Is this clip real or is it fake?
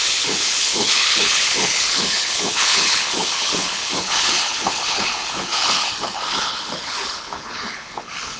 fake